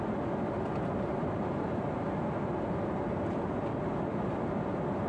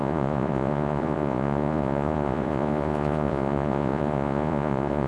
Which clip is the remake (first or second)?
second